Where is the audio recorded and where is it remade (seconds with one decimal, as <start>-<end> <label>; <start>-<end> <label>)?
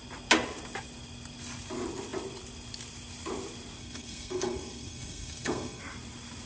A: 0.0-3.8 recorded; 3.8-5.8 remade; 5.8-6.5 recorded